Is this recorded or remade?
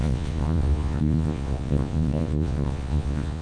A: remade